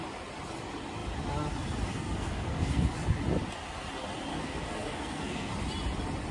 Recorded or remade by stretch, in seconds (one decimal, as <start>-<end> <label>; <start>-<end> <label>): 0.0-1.9 recorded; 1.9-2.9 remade; 2.9-4.3 recorded; 4.3-5.5 remade; 5.5-6.3 recorded